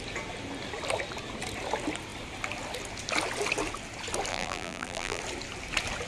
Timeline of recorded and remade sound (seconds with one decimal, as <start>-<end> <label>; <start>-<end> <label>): 0.0-4.3 recorded; 4.3-5.2 remade; 5.2-6.1 recorded